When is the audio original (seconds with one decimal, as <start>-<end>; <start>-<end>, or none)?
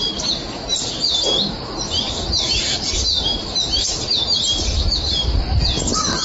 0.0-6.2